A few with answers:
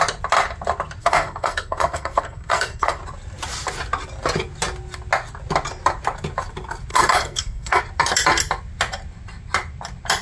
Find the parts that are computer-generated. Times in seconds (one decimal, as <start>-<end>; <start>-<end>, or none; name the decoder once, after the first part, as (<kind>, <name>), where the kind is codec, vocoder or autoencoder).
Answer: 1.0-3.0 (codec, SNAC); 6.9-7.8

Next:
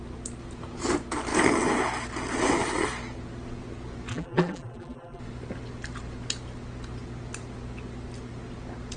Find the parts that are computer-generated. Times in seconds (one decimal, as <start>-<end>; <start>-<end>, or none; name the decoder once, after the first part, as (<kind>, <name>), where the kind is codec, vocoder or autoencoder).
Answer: 4.1-5.2 (vocoder, BigVGAN v2)

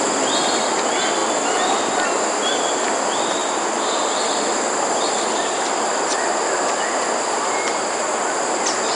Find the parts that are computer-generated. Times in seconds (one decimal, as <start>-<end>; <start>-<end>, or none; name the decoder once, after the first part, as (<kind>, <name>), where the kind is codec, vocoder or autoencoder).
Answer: none

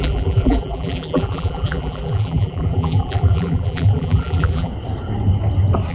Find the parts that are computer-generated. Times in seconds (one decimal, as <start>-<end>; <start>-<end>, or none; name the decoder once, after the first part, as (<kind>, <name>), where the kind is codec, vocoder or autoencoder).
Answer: 0.0-4.7 (vocoder, BigVGAN v2)